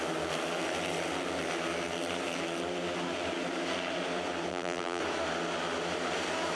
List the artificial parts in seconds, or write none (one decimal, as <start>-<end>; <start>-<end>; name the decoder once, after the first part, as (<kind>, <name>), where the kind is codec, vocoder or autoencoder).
4.5-5.0 (vocoder, BigVGAN v2)